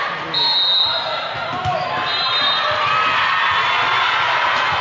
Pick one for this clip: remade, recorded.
recorded